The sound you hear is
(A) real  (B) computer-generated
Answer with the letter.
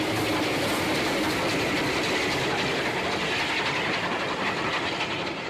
A